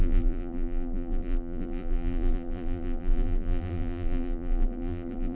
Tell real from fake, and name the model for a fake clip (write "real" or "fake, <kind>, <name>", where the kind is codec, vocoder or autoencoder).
fake, vocoder, BigVGAN v2